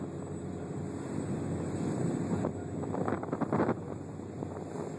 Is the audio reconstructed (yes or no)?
no